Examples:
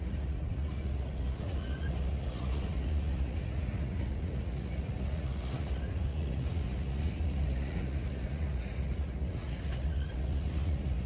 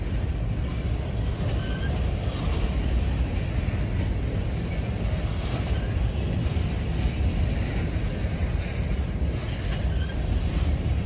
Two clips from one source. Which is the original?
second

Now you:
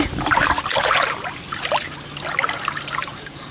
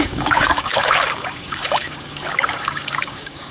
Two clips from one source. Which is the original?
first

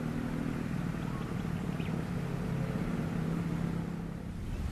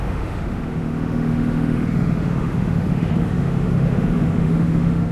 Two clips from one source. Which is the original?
first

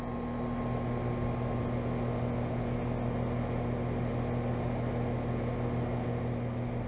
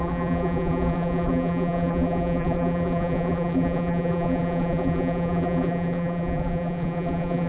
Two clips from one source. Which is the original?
first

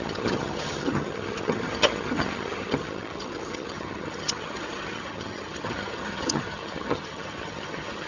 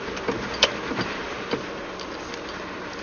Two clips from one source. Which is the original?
second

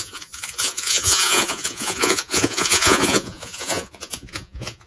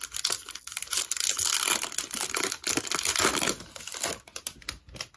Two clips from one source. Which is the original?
second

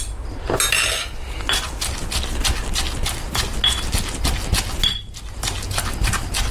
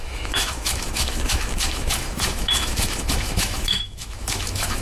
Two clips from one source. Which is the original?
first